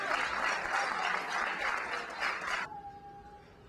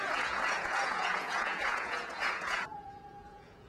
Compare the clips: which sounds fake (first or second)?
second